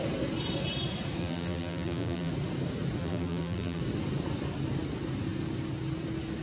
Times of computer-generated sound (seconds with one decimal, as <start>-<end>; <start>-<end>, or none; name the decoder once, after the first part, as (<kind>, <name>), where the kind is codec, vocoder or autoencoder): 1.2-2.3 (vocoder, BigVGAN v2); 3.0-3.8